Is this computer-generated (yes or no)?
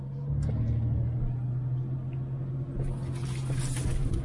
no